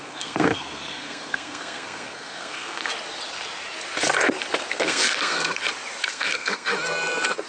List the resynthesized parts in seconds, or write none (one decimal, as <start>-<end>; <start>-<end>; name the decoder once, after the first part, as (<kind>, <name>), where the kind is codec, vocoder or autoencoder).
0.0-2.9 (codec, SNAC); 4.7-5.6; 6.1-6.7